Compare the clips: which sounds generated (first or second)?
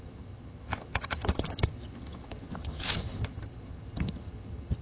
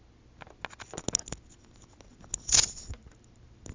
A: first